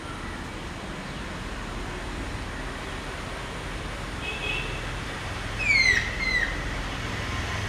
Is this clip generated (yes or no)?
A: no